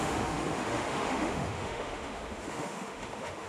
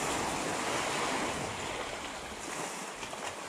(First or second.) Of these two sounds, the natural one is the second